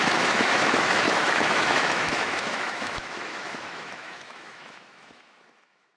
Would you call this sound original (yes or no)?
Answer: no